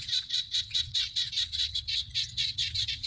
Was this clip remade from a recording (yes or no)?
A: yes